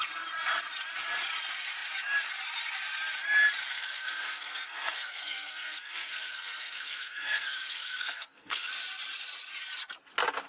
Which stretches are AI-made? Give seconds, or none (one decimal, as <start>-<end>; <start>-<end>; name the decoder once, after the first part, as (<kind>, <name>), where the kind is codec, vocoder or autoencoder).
3.7-8.7 (codec, SNAC)